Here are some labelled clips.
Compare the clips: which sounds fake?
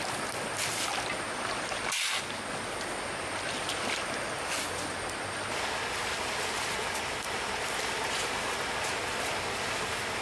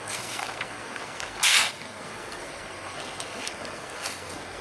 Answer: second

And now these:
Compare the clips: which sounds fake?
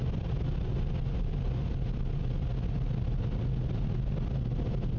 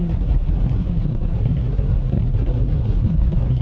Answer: second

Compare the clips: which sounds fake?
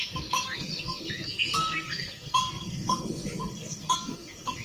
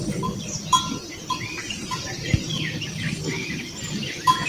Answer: first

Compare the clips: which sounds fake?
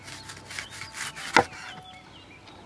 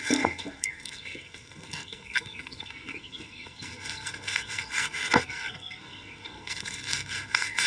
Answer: second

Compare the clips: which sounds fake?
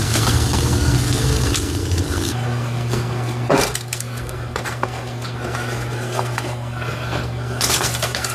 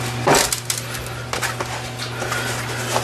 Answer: first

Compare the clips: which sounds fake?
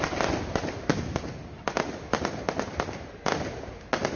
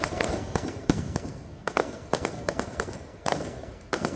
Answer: second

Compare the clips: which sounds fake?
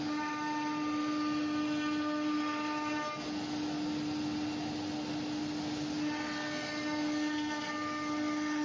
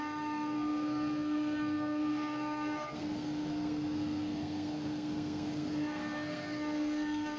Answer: second